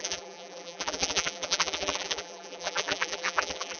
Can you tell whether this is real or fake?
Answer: fake